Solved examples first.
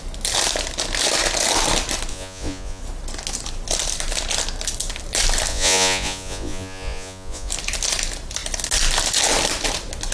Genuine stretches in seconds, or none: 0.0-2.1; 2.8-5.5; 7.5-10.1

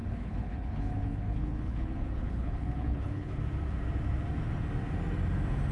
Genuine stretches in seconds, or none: 3.4-5.7

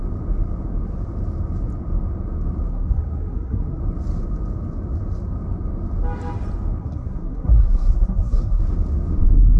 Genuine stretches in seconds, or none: 0.0-2.7; 3.8-6.8; 8.6-9.6

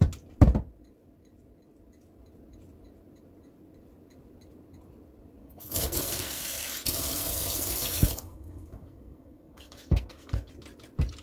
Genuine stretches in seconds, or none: 0.0-5.4; 10.5-11.2

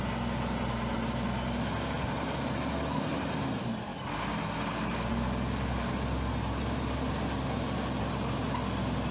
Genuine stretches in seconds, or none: 0.0-9.1

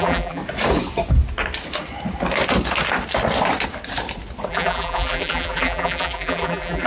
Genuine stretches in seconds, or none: 0.4-4.5

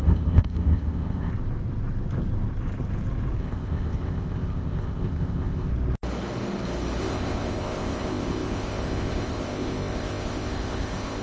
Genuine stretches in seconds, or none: 1.3-3.4; 5.7-7.0

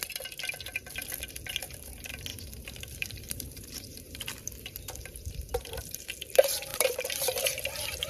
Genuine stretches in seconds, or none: 0.0-2.3; 4.2-5.5; 6.1-6.7